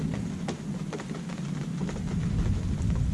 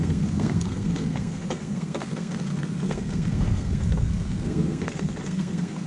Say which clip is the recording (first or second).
first